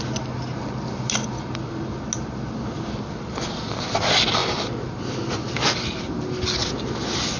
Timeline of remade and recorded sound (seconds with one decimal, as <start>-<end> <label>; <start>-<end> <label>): 0.0-7.4 recorded